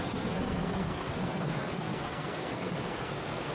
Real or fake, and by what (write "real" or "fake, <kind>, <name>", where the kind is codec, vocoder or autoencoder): fake, codec, SNAC